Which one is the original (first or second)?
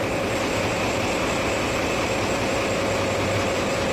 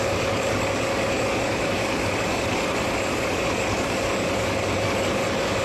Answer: first